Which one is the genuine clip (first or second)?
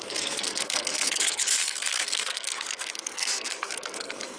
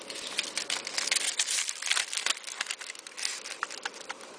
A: second